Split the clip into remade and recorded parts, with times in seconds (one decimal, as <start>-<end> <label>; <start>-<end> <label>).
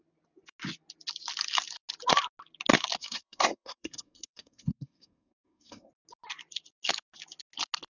0.0-3.0 recorded; 3.0-5.9 remade; 5.9-8.0 recorded